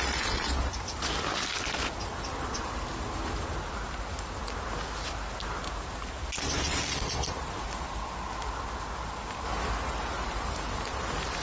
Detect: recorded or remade recorded